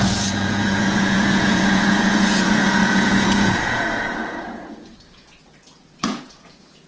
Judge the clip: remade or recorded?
remade